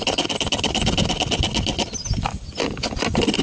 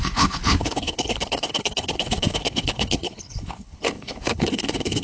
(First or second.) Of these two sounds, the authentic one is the first